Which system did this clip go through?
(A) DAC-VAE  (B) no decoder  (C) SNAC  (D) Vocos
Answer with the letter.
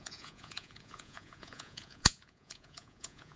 D